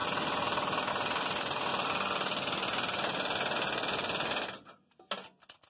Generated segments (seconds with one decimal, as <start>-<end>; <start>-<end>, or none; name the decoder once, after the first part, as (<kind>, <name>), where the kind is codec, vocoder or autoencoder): none